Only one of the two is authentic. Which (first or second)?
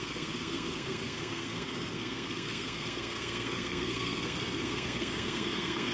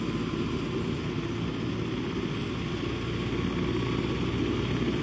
second